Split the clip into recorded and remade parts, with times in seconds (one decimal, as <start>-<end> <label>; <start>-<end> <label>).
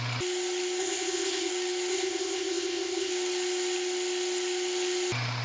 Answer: 0.0-0.8 recorded; 0.8-1.5 remade; 1.5-1.9 recorded; 1.9-3.1 remade; 3.1-5.4 recorded